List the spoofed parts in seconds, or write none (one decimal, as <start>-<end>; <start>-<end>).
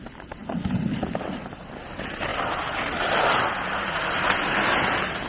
none